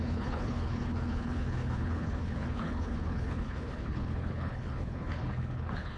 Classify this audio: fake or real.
fake